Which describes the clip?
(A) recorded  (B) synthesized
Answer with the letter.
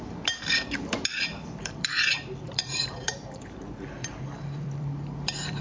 B